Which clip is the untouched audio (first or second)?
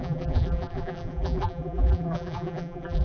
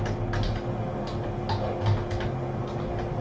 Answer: second